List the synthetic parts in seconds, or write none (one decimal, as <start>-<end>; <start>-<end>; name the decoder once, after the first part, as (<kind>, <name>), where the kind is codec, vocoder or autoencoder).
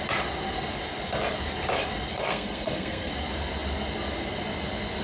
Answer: 2.1-3.1 (codec, SNAC)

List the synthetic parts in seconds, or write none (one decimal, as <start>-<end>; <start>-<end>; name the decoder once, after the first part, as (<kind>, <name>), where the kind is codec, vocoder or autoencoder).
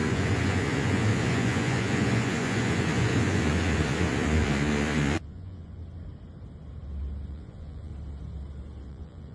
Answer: 0.0-5.8 (vocoder, Vocos); 7.3-7.9; 8.9-9.3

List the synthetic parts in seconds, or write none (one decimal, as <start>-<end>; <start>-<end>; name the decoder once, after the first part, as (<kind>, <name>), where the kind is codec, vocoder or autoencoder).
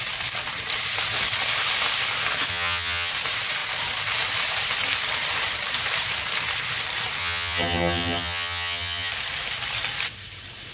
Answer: 2.5-3.1 (vocoder, HiFi-GAN); 7.2-9.1